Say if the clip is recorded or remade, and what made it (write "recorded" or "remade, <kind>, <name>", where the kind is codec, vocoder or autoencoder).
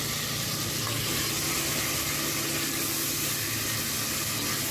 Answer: recorded